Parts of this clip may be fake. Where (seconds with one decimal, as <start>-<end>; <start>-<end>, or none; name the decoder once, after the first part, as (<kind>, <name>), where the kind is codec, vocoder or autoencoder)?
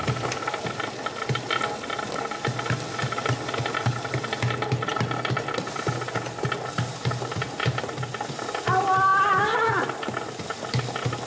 none